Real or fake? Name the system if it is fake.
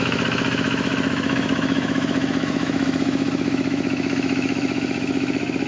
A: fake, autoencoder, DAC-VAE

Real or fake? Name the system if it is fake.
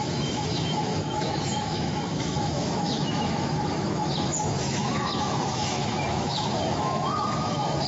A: fake, autoencoder, DAC-VAE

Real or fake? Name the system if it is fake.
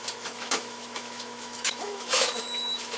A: fake, autoencoder, DAC-VAE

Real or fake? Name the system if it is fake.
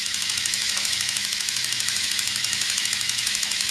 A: fake, autoencoder, DAC-VAE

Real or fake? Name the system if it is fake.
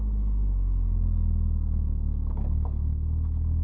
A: real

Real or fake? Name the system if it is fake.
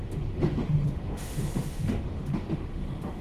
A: fake, autoencoder, DAC-VAE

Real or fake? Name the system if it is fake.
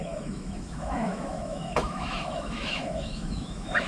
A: fake, autoencoder, DAC-VAE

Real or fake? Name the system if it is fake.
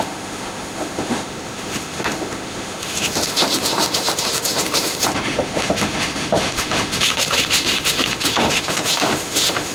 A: fake, autoencoder, DAC-VAE